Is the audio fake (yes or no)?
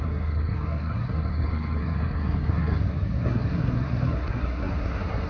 yes